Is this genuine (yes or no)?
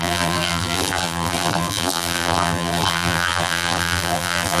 no